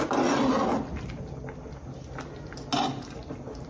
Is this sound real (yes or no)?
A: yes